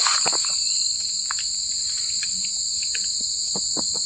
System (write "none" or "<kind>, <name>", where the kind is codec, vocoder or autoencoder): none